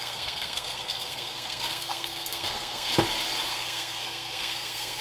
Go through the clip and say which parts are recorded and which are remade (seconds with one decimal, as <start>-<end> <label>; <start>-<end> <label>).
0.0-2.9 remade; 2.9-3.5 recorded; 3.5-5.0 remade